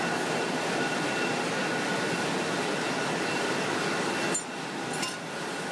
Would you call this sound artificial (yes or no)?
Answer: no